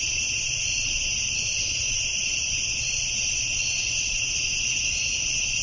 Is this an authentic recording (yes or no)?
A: no